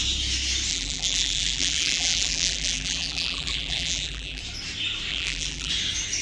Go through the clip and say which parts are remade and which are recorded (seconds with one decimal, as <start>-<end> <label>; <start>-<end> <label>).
0.0-0.7 recorded; 0.7-4.4 remade; 4.4-5.1 recorded; 5.1-5.7 remade; 5.7-6.2 recorded